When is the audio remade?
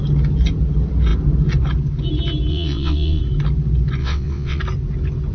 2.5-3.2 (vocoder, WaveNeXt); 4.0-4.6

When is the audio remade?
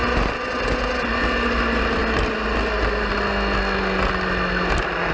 none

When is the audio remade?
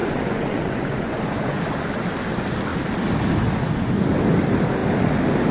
0.0-1.6 (vocoder, Vocos)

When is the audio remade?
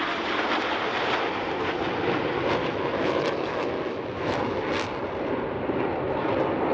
2.6-4.7 (autoencoder, DAC-VAE)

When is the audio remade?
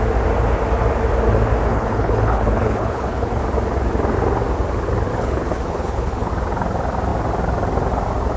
1.7-3.4 (codec, HILCodec); 5.1-6.3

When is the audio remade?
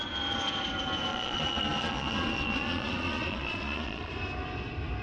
1.1-4.1 (vocoder, Vocos)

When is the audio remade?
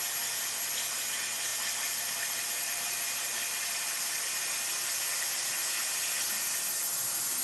1.5-4.2 (vocoder, BigVGAN v2)